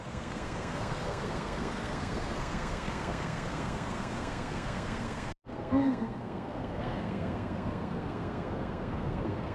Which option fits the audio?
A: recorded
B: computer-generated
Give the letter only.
B